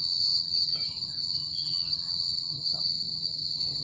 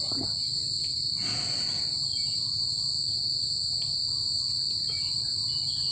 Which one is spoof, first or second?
first